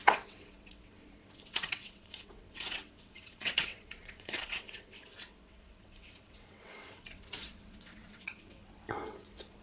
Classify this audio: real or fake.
fake